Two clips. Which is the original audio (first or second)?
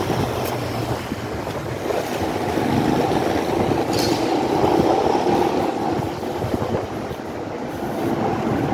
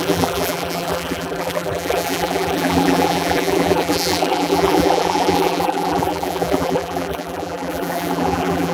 first